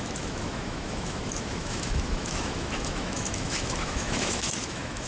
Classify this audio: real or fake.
fake